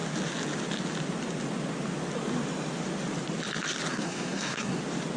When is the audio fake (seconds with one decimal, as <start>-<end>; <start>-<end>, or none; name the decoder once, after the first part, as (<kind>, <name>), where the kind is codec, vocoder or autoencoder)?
3.9-4.8 (codec, SNAC)